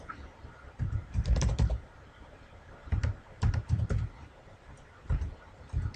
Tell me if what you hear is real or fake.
fake